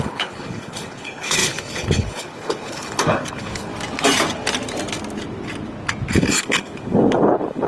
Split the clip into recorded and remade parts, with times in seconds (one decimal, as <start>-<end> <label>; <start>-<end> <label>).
0.0-3.7 remade; 3.7-6.1 recorded; 6.1-7.7 remade